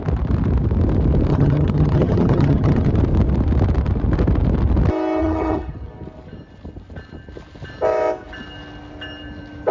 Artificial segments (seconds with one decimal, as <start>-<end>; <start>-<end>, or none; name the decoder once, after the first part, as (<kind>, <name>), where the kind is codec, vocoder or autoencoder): 1.3-2.9 (vocoder, HiFi-GAN); 5.2-5.9